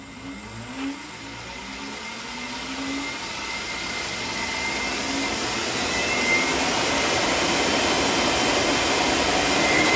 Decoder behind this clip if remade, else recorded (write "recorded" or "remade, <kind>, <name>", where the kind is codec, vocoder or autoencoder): recorded